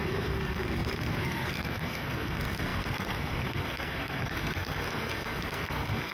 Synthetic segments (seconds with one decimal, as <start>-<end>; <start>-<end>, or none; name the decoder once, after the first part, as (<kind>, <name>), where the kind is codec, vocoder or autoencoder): 0.0-6.1 (codec, SNAC)